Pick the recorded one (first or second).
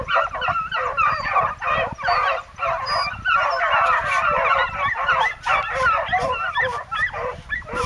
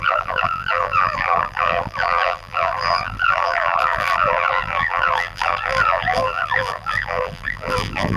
first